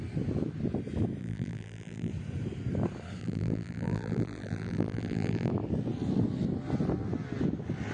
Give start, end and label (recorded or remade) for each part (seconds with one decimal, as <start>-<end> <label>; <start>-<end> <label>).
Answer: 0.0-1.2 recorded; 1.2-2.1 remade; 2.1-3.2 recorded; 3.2-5.5 remade; 5.5-7.9 recorded